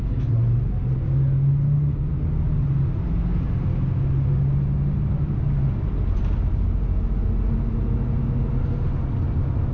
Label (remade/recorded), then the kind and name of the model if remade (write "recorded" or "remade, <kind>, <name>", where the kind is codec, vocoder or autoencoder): recorded